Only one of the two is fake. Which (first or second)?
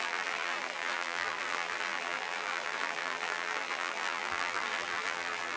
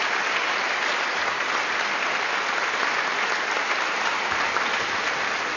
first